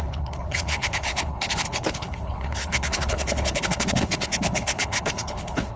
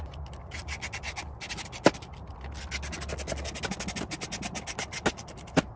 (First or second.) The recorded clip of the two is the second